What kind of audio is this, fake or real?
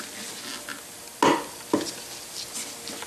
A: real